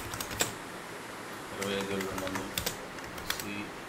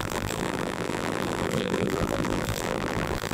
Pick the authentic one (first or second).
first